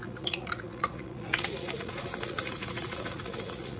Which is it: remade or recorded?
remade